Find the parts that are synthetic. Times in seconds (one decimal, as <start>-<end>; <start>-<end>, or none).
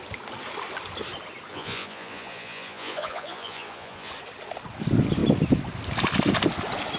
1.5-4.1